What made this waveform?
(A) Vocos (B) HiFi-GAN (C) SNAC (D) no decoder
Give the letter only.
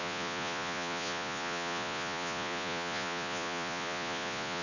A